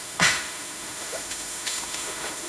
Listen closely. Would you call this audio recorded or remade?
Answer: remade